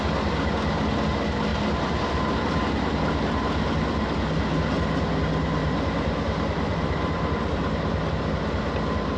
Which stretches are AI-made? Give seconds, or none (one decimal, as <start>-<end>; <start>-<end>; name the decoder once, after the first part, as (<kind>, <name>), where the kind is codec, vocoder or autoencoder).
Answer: 1.5-2.6 (vocoder, BigVGAN v2); 5.6-8.1